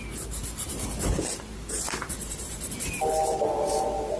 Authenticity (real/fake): real